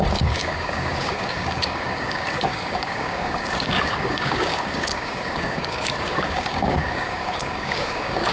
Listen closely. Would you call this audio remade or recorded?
remade